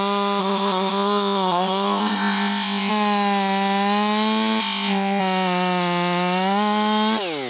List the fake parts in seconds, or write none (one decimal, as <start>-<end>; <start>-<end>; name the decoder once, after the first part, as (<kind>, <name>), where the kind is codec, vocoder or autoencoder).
0.4-2.9 (codec, ZipCodec); 4.6-5.2